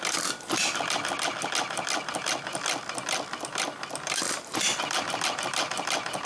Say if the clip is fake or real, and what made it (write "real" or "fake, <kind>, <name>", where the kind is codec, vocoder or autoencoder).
real